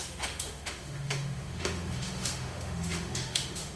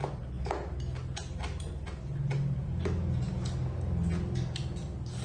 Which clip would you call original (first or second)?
second